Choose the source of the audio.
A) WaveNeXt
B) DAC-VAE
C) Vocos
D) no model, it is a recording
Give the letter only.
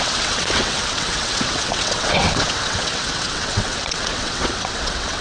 A